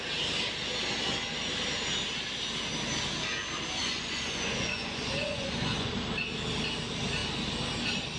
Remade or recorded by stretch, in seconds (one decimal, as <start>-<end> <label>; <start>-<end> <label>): 0.0-3.8 recorded; 3.8-5.9 remade; 5.9-8.2 recorded